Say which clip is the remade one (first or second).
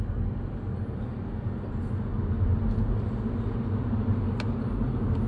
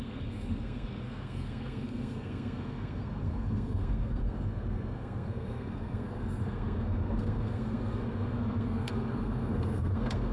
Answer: second